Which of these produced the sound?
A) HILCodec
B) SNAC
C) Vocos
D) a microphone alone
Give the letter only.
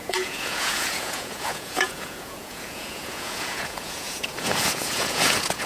C